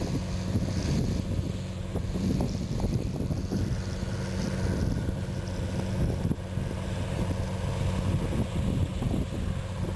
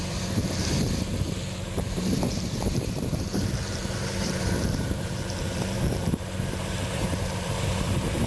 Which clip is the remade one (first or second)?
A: second